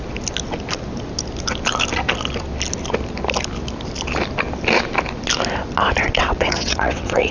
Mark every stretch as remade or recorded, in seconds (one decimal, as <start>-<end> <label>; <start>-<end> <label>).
0.0-6.0 recorded; 6.0-7.3 remade